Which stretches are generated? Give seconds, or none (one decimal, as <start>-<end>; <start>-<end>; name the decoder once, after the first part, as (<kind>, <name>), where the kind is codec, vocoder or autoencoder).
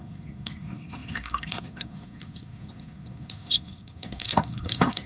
0.0-5.1 (codec, SNAC)